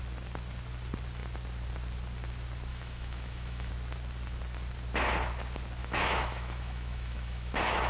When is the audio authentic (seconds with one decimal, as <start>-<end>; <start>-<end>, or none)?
0.0-2.7; 3.7-5.8